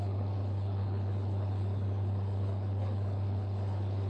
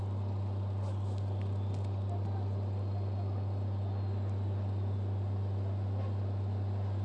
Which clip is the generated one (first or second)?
first